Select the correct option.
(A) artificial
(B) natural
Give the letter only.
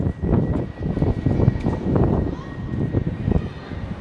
B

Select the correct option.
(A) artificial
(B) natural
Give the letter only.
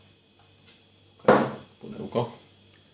B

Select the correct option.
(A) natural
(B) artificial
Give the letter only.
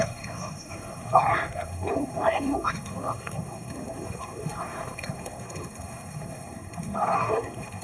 B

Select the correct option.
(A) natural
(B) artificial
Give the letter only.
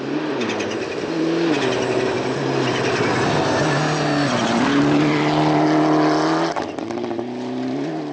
A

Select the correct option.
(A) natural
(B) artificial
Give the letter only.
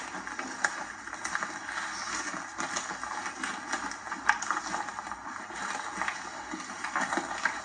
A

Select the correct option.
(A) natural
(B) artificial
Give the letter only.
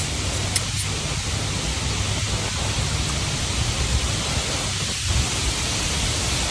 A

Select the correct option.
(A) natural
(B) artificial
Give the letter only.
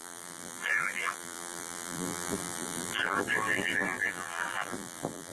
B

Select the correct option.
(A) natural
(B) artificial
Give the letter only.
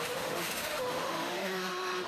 B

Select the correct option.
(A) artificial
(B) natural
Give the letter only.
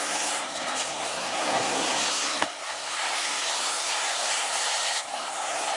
A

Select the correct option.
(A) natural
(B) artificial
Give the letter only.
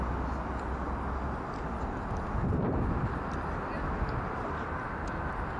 A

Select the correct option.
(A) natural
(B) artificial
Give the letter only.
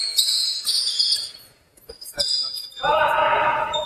B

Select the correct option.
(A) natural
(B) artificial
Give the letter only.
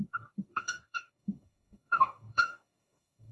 B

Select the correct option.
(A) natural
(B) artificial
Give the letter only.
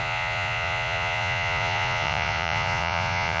B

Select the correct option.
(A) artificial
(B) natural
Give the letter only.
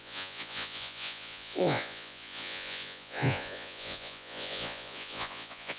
A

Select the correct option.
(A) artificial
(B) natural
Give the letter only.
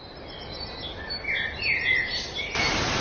B